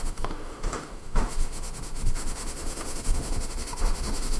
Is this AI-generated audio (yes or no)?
yes